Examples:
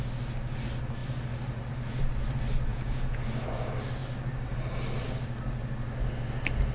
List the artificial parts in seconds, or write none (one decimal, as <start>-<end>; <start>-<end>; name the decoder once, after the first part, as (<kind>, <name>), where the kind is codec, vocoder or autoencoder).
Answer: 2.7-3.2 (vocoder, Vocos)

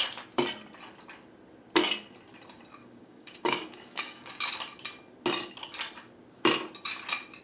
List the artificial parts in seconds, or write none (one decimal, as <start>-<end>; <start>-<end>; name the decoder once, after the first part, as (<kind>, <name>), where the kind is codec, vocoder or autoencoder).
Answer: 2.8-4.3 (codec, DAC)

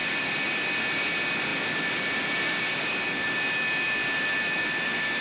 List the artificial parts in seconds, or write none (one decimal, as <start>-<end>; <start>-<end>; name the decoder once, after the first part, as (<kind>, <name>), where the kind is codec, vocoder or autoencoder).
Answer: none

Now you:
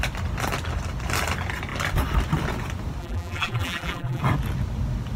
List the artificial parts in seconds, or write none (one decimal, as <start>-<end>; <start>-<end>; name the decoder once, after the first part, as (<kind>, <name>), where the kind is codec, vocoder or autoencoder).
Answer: 3.0-4.2 (vocoder, BigVGAN v2)

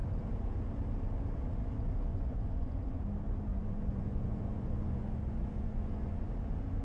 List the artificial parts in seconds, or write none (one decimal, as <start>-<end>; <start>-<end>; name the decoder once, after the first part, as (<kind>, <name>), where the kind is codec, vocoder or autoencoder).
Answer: 2.1-3.0 (vocoder, Vocos); 3.5-6.3